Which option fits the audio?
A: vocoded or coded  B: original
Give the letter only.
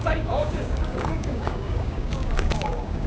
A